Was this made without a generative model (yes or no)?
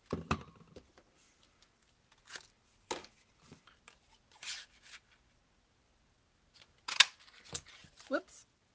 yes